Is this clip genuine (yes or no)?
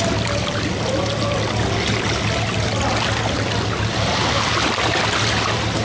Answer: yes